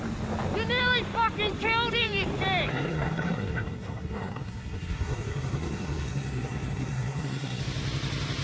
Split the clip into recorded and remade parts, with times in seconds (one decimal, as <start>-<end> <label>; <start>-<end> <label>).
0.0-2.7 recorded; 2.7-7.6 remade; 7.6-8.4 recorded